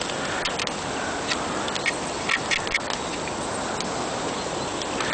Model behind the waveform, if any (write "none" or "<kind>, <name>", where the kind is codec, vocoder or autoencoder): none